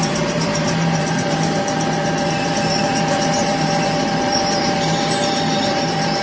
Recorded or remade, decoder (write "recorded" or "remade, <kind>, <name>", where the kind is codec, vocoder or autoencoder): remade, vocoder, BigVGAN v2